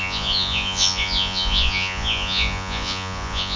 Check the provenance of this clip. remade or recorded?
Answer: remade